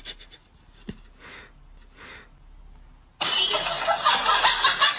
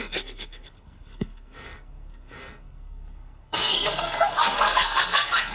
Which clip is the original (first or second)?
first